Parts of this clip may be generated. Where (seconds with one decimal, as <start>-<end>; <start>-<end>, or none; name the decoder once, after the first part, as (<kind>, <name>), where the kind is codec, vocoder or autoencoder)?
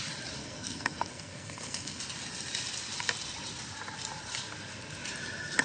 0.4-2.0 (codec, SNAC)